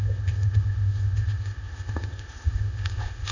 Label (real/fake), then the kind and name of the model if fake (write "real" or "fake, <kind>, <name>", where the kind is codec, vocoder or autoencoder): fake, codec, ZipCodec